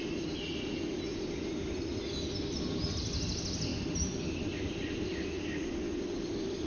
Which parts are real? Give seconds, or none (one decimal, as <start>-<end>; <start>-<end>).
0.0-6.7